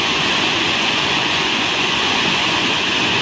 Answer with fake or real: fake